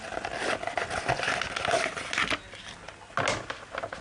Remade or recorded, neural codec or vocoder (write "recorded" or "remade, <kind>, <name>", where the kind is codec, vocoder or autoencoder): recorded